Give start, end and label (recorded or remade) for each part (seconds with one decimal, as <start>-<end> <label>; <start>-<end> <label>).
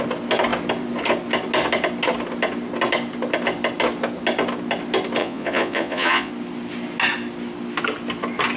0.0-5.2 recorded; 5.2-6.3 remade; 6.3-8.6 recorded